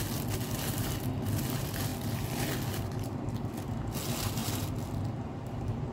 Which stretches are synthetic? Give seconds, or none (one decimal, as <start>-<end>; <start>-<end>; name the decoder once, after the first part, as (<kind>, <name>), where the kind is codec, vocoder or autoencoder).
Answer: none